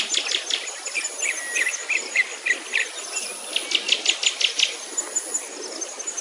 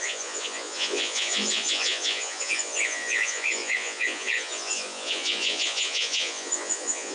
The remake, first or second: second